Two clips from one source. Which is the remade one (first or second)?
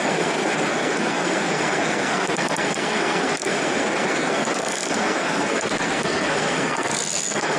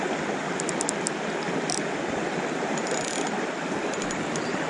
first